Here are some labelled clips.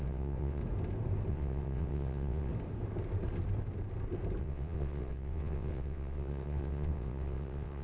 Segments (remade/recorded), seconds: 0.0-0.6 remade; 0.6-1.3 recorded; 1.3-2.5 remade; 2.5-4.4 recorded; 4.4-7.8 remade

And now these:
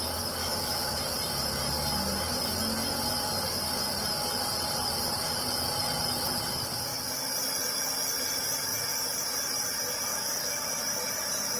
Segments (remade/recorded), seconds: 0.0-0.4 recorded; 0.4-1.0 remade; 1.0-10.1 recorded; 10.1-10.8 remade; 10.8-11.6 recorded

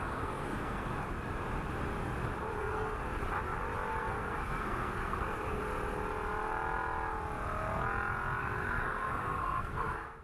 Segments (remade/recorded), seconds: 0.0-0.9 remade; 0.9-2.6 recorded; 2.6-3.0 remade; 3.0-3.9 recorded; 3.9-5.6 remade; 5.6-8.4 recorded; 8.4-10.2 remade

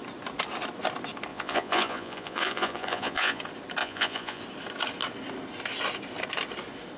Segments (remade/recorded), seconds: 0.0-1.3 recorded; 1.3-3.4 remade; 3.4-3.8 recorded; 3.8-4.4 remade; 4.4-7.0 recorded

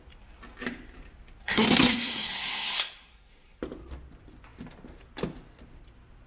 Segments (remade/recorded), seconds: 0.0-1.4 recorded; 1.4-3.6 remade; 3.6-6.3 recorded

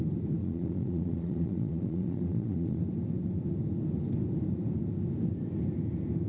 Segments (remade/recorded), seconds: 0.0-0.4 recorded; 0.4-2.8 remade; 2.8-6.3 recorded

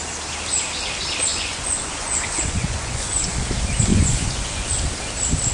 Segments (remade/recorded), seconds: 0.0-1.3 recorded; 1.3-3.5 remade; 3.5-3.9 recorded; 3.9-4.7 remade; 4.7-5.5 recorded

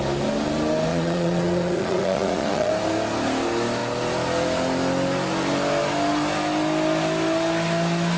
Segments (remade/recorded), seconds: 0.0-0.9 recorded; 0.9-2.7 remade; 2.7-8.2 recorded